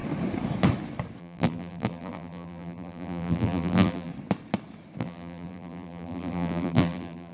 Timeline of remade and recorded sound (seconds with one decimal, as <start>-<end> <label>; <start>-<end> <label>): 0.0-1.2 recorded; 1.2-4.1 remade; 4.1-5.0 recorded; 5.0-7.3 remade